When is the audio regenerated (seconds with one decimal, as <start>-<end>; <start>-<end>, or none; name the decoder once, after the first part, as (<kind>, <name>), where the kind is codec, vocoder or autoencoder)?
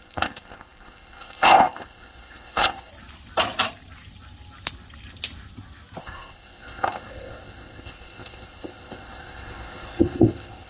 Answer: 0.0-2.9 (codec, ZipCodec); 6.0-10.7